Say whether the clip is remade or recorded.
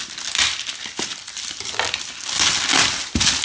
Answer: recorded